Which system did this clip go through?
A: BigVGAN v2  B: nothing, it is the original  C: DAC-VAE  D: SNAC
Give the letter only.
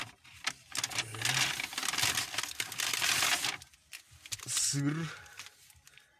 B